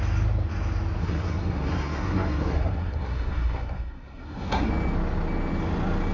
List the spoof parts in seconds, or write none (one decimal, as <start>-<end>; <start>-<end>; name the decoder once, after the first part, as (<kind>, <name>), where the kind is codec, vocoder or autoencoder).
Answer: 1.0-4.7 (codec, SNAC)